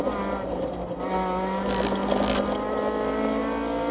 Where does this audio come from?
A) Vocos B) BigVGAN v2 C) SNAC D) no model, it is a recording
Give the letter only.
D